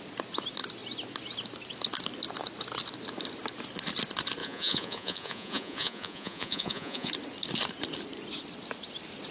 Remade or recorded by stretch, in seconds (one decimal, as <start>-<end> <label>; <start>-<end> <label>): 0.0-4.4 recorded; 4.4-7.1 remade; 7.1-9.3 recorded